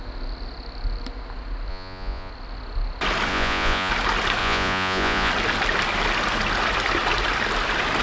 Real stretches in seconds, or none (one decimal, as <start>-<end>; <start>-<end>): 0.0-1.7; 2.3-3.3; 3.9-4.4; 5.3-8.0